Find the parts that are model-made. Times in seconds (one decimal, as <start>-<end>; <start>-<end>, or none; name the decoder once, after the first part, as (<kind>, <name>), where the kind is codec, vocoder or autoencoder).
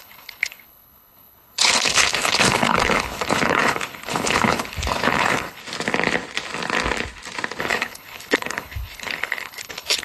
0.0-5.6 (codec, HILCodec); 7.6-10.0